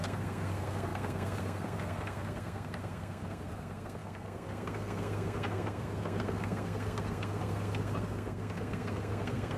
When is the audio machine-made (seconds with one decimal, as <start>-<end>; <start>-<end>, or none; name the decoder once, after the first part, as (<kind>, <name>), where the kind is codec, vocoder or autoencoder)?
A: 0.0-9.6 (codec, SNAC)